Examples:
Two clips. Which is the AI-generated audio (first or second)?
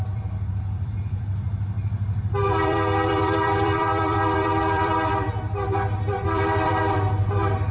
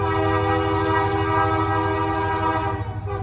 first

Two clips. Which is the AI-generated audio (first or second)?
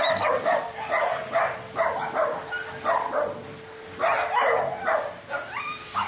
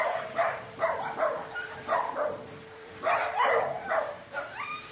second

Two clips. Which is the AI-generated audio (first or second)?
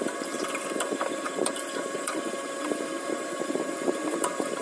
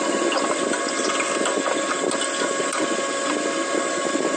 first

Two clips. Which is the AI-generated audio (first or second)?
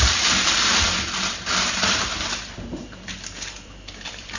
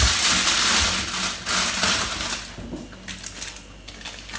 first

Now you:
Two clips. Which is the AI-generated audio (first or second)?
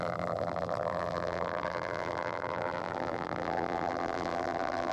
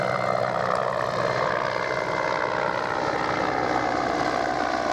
first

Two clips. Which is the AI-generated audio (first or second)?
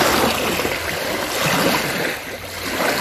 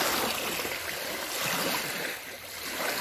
second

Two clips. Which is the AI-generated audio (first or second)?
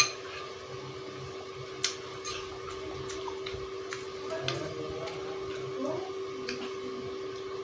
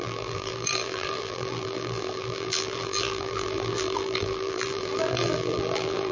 second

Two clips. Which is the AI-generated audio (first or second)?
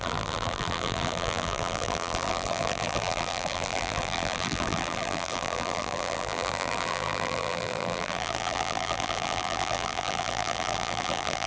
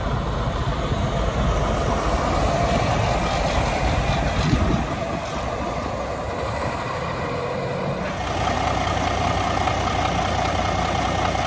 first